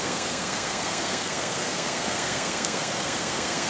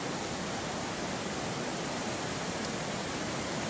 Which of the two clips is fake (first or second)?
first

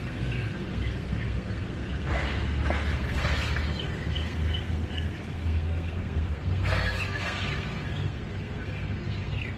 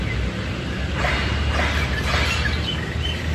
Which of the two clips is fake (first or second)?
first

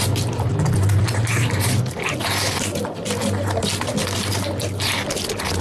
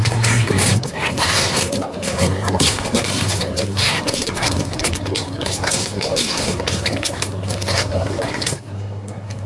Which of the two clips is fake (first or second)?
second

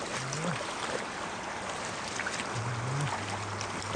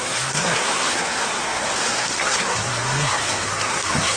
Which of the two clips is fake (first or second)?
second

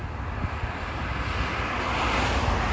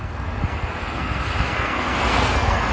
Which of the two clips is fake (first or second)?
second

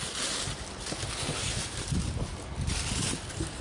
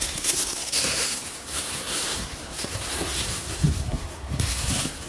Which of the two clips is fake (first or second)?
second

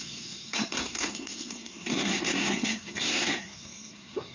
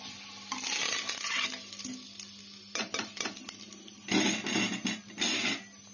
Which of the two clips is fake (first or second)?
first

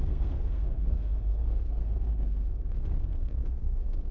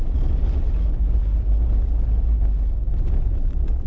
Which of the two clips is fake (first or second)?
first